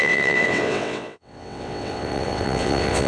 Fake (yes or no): yes